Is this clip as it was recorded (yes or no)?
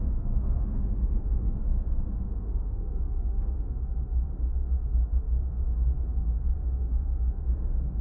no